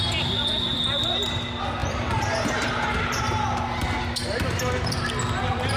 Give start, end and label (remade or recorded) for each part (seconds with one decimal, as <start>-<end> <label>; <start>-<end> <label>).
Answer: 0.0-1.8 recorded; 1.8-3.2 remade; 3.2-4.2 recorded; 4.2-5.1 remade; 5.1-5.8 recorded